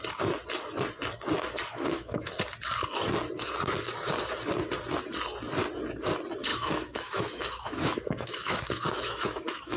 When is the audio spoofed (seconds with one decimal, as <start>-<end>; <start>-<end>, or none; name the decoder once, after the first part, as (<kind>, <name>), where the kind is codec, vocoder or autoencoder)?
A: 1.7-2.3 (autoencoder, DAC-VAE); 6.5-9.8